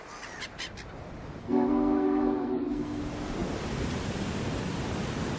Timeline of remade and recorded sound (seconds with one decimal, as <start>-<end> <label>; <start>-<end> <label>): 0.0-1.4 recorded; 1.4-3.0 remade; 3.0-5.4 recorded